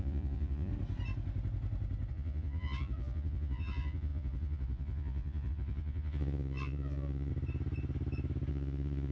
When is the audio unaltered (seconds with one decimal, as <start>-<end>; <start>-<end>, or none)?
0.7-2.1; 7.3-8.5